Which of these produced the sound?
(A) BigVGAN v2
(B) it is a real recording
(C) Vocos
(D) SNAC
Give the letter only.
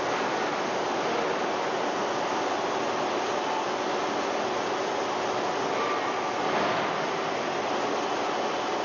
B